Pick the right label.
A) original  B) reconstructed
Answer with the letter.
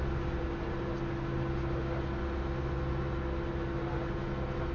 A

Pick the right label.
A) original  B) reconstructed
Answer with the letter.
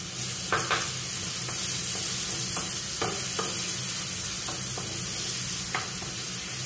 A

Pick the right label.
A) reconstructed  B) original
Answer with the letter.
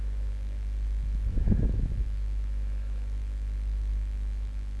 A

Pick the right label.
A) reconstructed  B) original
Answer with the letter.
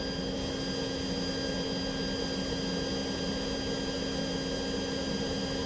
B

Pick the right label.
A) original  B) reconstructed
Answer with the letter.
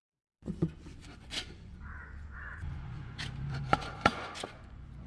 B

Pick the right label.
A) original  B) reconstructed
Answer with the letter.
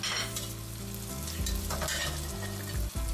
A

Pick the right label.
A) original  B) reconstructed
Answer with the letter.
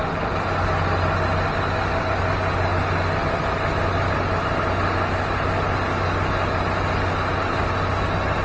A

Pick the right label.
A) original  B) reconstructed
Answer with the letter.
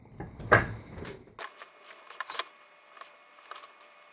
A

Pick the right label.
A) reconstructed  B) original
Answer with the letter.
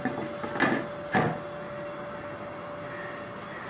B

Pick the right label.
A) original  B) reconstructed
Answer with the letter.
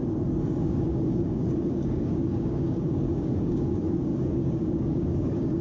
B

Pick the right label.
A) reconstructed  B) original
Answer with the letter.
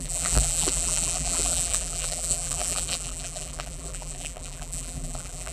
A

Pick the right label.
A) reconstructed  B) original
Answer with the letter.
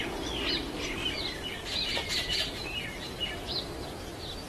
B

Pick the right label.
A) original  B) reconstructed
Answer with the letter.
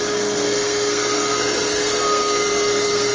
B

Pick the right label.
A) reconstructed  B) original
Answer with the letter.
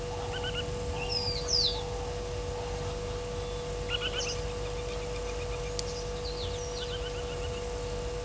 B